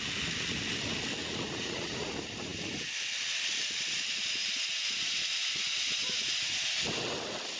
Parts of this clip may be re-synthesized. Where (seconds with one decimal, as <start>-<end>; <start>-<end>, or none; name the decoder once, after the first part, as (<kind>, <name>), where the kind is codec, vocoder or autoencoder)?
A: 1.2-2.1 (vocoder, Vocos); 4.4-6.8